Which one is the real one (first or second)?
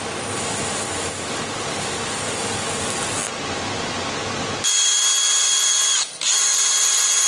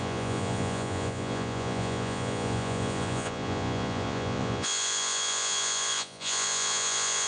first